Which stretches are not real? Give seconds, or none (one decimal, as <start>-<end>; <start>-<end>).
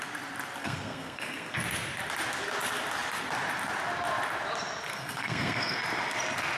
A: 0.6-1.6; 4.9-5.8